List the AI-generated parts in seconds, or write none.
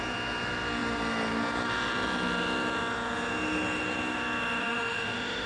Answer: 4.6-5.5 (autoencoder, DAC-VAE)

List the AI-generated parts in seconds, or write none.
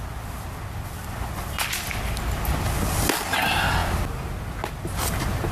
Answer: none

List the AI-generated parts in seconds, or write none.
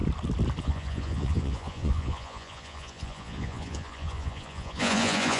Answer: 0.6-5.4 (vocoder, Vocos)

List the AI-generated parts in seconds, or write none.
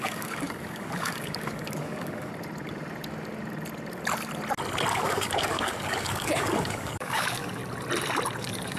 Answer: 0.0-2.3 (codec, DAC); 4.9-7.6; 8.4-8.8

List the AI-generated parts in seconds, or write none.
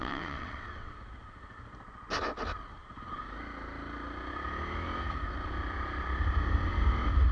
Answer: 0.0-0.9 (vocoder, WaveNeXt)